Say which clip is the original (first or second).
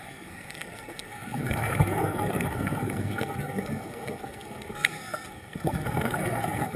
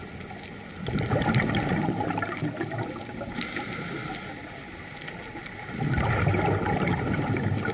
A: second